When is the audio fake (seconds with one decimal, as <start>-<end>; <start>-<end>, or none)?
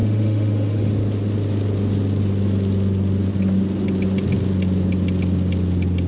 0.0-0.9